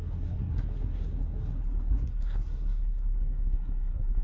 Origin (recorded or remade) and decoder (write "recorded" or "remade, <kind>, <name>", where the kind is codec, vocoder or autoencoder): remade, codec, SNAC